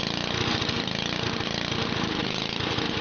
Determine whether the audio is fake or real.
real